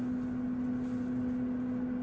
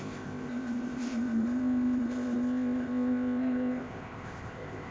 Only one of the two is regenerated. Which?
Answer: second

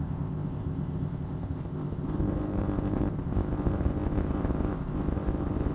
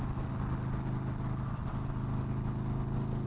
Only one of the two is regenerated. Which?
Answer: first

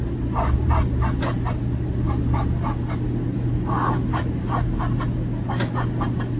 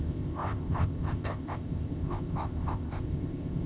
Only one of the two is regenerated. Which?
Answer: second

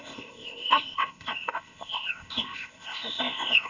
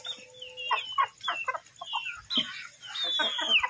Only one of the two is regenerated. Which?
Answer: first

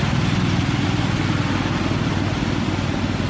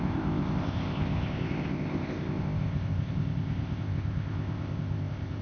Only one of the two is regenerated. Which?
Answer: second